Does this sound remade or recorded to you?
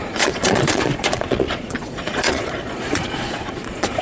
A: remade